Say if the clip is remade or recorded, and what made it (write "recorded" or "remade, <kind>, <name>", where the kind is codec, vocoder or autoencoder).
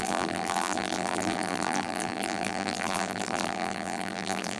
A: remade, vocoder, BigVGAN v2